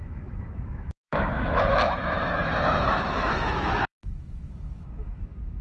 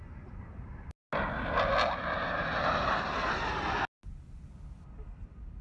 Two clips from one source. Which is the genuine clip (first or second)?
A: second